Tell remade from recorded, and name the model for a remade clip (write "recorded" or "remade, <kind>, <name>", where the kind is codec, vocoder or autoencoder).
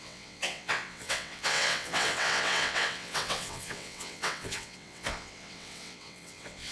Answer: remade, vocoder, WaveNeXt